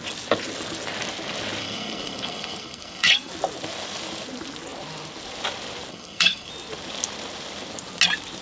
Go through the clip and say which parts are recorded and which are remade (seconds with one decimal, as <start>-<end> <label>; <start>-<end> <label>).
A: 0.0-1.6 recorded; 1.6-3.3 remade; 3.3-5.9 recorded; 5.9-6.5 remade; 6.5-8.4 recorded